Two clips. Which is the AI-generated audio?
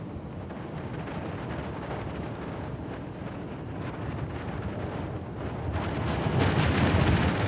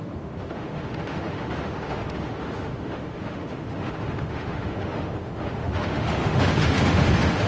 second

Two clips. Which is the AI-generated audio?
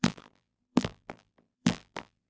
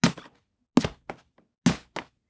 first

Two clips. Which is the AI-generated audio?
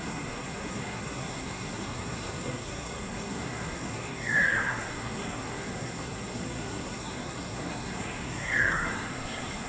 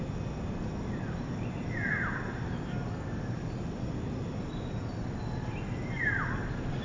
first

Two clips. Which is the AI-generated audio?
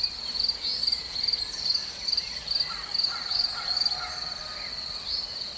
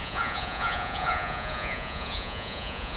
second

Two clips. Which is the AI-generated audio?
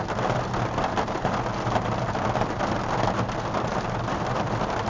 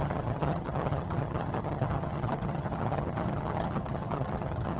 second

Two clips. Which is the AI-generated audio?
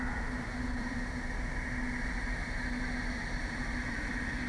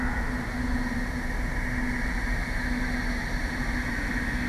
first